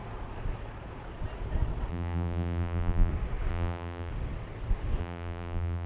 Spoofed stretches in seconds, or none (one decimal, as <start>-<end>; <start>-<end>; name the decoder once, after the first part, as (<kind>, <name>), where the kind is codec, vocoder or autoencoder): 1.9-3.1 (vocoder, BigVGAN v2); 3.5-4.1; 5.0-5.9

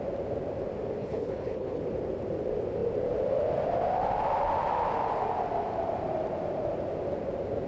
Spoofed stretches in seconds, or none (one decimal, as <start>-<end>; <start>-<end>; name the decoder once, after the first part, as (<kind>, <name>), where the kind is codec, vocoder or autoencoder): 1.0-1.8 (codec, HILCodec)

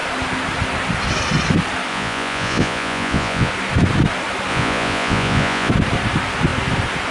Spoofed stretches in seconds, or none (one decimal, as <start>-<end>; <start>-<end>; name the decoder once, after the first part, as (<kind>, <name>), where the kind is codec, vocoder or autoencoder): 1.9-3.5 (vocoder, Vocos); 4.5-5.7

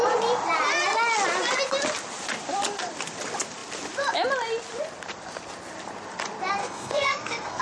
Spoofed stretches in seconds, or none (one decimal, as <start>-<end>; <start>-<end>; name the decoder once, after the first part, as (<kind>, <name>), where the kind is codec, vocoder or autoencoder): 6.6-7.6 (codec, SNAC)

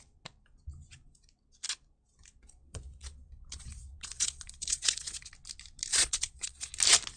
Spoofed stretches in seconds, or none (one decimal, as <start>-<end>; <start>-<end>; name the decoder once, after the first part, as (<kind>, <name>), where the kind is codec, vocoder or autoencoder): 2.6-5.3 (vocoder, Vocos); 5.9-6.7

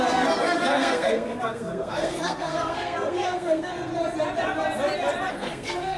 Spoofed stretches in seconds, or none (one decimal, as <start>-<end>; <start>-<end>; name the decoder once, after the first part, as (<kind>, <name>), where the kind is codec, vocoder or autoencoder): 0.0-3.9 (codec, SNAC); 5.3-6.0

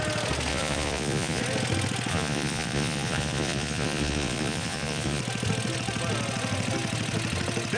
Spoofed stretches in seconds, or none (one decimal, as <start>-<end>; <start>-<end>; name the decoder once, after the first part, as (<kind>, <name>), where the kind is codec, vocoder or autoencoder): 0.5-1.4 (vocoder, Vocos); 2.1-5.2